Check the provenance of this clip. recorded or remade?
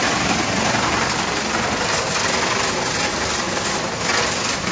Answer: recorded